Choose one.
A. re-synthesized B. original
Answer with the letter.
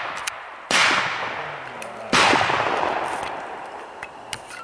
B